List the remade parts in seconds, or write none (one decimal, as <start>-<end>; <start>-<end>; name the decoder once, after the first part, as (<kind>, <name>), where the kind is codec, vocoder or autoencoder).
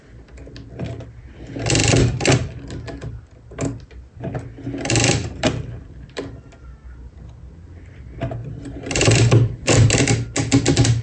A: 1.8-2.6 (vocoder, BigVGAN v2); 5.2-6.2; 8.4-9.9